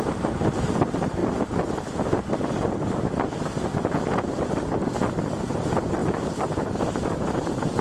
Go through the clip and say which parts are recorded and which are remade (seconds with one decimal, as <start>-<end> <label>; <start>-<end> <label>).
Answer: 0.0-6.0 recorded; 6.0-7.8 remade